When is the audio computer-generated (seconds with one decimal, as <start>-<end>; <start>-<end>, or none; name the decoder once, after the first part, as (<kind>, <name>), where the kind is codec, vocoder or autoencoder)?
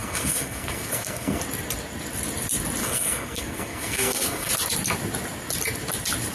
0.0-1.4 (codec, SNAC); 2.8-4.5